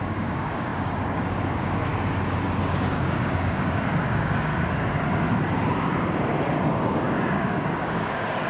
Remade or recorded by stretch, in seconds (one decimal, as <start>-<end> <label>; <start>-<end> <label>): 0.0-1.9 remade; 1.9-2.9 recorded; 2.9-4.5 remade; 4.5-6.9 recorded; 6.9-8.5 remade